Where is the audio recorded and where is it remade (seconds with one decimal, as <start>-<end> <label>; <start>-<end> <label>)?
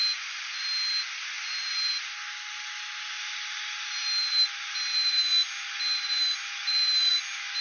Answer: 0.0-7.6 recorded